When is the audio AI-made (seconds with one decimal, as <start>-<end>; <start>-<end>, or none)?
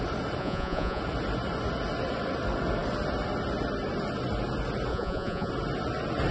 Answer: 0.4-1.0; 4.9-5.5